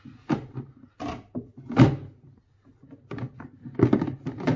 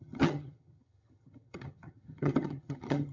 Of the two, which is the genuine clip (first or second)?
first